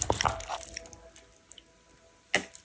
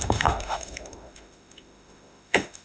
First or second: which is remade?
second